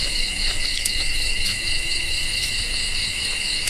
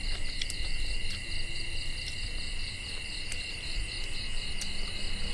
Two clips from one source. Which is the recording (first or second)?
second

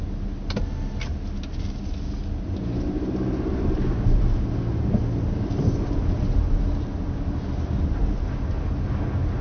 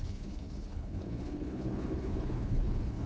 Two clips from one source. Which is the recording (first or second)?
first